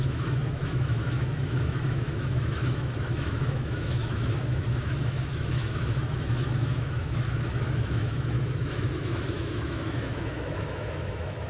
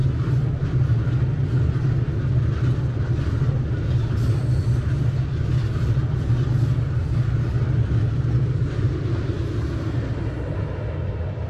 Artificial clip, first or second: first